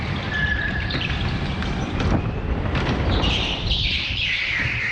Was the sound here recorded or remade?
remade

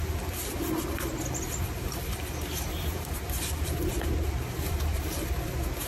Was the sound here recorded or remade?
remade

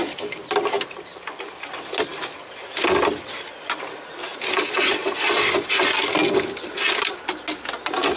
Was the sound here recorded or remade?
recorded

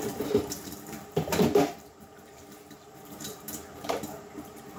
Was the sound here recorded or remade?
remade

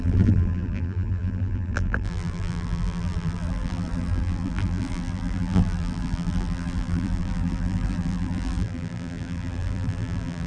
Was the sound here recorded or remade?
remade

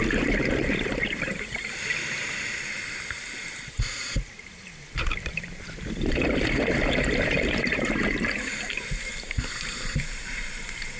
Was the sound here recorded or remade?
remade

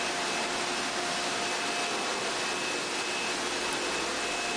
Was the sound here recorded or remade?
recorded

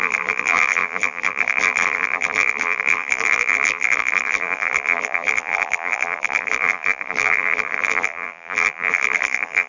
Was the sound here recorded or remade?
remade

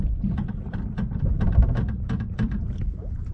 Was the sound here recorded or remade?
remade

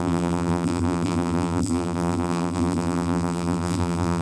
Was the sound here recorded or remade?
remade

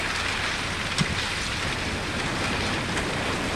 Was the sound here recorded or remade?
recorded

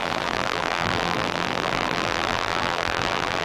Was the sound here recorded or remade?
remade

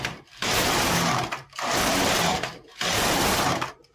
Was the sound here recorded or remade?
remade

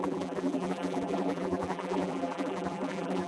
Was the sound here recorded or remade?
remade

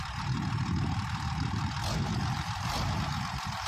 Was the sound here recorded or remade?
remade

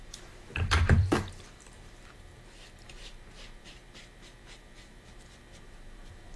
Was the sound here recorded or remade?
remade